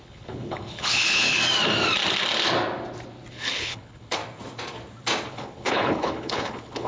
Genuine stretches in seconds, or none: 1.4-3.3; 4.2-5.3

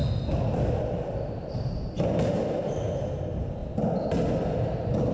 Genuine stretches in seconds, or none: 0.0-5.1

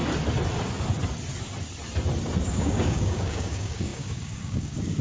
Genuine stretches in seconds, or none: 0.0-2.5

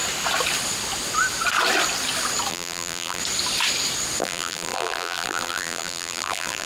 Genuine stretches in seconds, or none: 0.0-2.5; 3.2-4.2

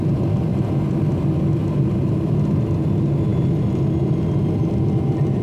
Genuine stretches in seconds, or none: 0.0-5.4